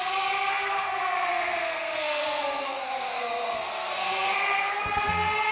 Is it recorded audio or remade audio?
remade